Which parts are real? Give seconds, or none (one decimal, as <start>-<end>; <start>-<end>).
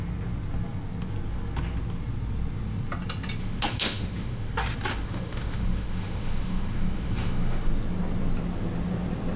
0.0-3.4; 4.5-4.9; 7.7-9.4